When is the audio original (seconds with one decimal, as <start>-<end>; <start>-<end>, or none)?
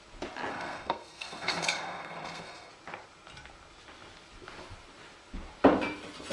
0.0-0.5; 2.7-6.3